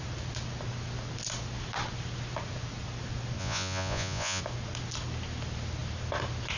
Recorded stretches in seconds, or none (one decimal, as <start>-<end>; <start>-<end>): 0.0-3.4; 4.4-6.6